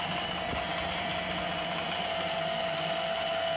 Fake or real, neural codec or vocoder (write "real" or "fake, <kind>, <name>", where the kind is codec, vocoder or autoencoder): real